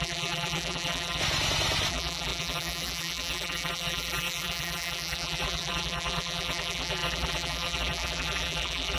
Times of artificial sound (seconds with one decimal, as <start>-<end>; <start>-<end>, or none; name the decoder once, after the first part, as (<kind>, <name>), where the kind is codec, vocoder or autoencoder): 0.0-1.2 (vocoder, BigVGAN v2); 1.9-9.0